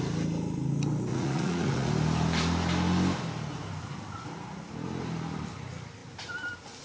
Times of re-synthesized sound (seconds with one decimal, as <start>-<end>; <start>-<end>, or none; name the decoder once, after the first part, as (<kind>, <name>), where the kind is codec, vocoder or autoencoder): 1.1-1.9 (vocoder, Vocos)